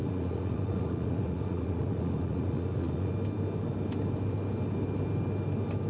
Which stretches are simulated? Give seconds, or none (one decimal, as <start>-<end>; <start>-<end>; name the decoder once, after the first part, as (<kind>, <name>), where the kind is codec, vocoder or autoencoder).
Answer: 0.0-3.1 (vocoder, Vocos)